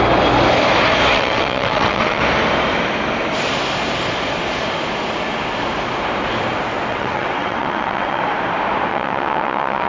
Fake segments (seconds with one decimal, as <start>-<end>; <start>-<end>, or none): 1.1-2.2; 6.9-8.2; 8.9-9.9